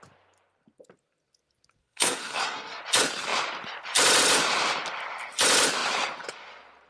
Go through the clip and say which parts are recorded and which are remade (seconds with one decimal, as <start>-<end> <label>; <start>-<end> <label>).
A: 0.0-1.8 recorded; 1.8-2.8 remade; 2.8-6.9 recorded